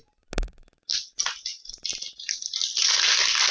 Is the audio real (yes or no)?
yes